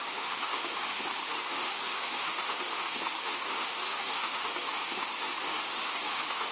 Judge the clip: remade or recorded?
remade